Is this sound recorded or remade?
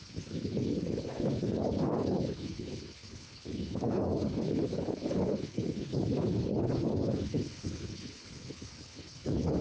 remade